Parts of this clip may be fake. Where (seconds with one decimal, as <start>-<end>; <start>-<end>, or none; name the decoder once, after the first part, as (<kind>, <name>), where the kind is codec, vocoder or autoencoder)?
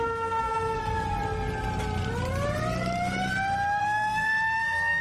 0.0-0.8 (codec, SNAC); 3.8-5.0